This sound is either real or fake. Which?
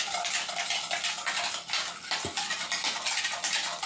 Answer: real